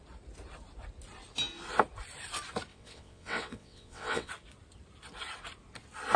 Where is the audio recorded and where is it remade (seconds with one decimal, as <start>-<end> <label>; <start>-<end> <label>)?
0.0-2.7 recorded; 2.7-4.3 remade; 4.3-6.2 recorded